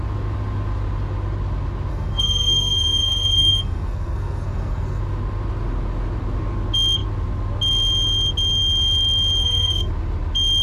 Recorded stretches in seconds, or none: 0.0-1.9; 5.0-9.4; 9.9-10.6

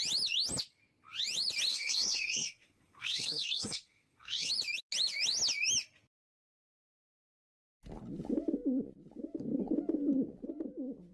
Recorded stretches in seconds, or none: 0.0-1.7; 4.5-11.1

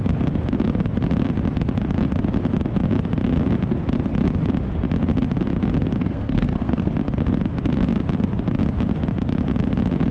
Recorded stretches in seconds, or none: 0.0-6.0; 6.9-10.1

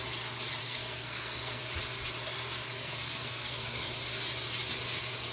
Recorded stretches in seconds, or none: 0.0-0.6; 1.6-2.8; 3.9-5.3

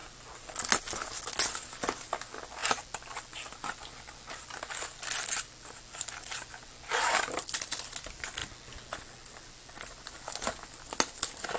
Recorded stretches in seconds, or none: 0.0-11.6

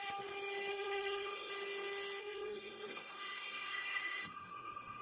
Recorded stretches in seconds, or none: 0.0-0.7; 1.5-2.2